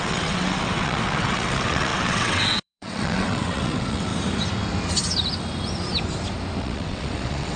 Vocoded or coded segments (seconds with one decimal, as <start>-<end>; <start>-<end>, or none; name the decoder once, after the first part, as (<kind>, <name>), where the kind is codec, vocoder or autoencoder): 0.0-4.1 (vocoder, WaveNeXt); 6.6-7.6